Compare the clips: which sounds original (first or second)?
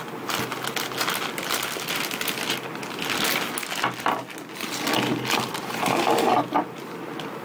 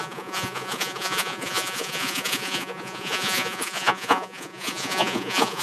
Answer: first